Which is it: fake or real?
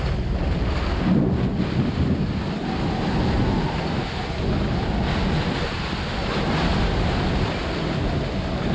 real